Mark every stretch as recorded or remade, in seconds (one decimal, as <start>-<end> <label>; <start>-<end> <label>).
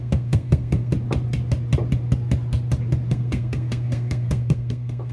0.0-0.9 remade; 0.9-3.1 recorded; 3.1-5.1 remade